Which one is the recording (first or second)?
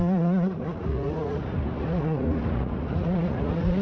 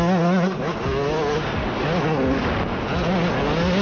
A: second